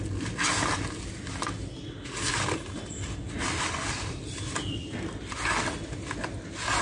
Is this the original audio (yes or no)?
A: yes